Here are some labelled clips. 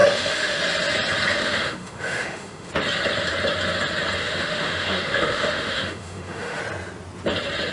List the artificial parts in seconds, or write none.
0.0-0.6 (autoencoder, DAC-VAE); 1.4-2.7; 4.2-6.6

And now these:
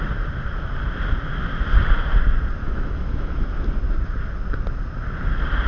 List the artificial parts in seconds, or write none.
2.6-3.3 (autoencoder, DAC-VAE)

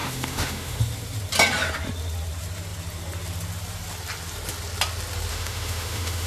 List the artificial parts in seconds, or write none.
0.0-0.8 (autoencoder, DAC-VAE); 5.3-6.3

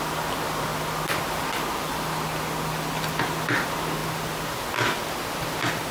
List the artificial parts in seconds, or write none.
none

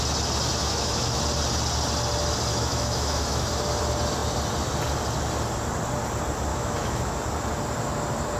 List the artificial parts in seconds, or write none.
0.6-1.2 (autoencoder, DAC-VAE); 2.5-3.5; 6.5-7.1